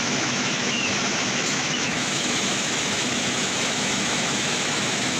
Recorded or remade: remade